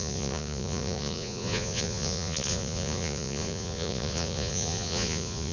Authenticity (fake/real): fake